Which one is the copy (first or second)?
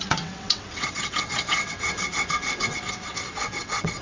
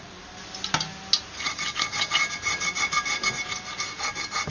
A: first